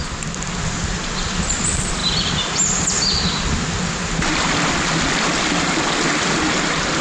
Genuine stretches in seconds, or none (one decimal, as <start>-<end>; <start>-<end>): 0.0-7.0